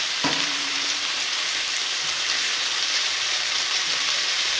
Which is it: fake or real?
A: fake